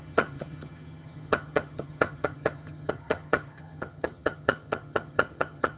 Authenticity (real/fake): fake